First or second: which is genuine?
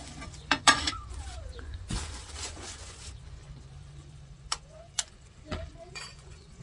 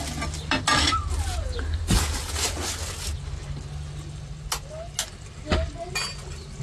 second